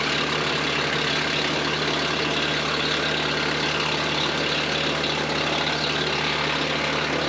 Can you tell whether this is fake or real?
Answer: real